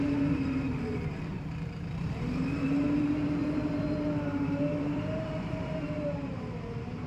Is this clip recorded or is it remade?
remade